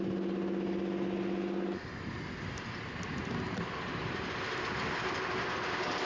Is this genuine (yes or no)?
yes